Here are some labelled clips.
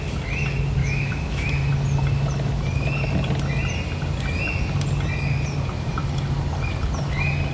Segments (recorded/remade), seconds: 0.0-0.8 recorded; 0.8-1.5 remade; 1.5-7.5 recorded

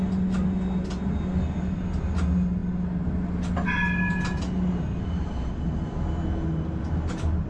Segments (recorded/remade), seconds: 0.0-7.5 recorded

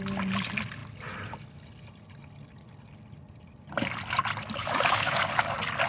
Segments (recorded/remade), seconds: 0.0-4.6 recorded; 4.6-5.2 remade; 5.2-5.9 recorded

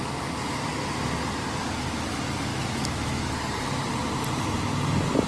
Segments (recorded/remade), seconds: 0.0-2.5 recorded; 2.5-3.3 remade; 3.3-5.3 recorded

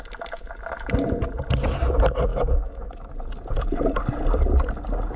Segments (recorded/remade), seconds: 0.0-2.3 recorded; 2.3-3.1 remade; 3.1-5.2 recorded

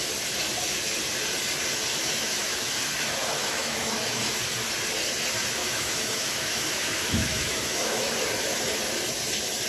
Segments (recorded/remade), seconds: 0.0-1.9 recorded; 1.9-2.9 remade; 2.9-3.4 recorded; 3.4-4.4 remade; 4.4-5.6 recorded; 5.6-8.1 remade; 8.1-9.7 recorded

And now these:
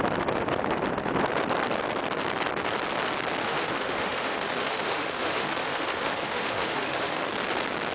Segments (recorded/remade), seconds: 0.0-3.4 recorded; 3.4-7.3 remade; 7.3-7.9 recorded

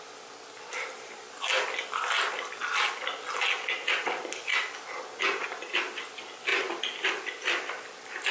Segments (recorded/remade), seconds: 0.0-8.3 recorded